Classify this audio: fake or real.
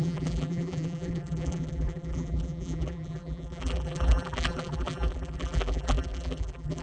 fake